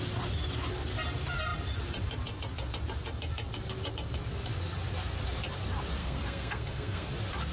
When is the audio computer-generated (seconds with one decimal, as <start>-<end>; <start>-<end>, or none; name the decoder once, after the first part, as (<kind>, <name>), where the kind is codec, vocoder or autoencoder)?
6.0-7.1 (codec, SNAC)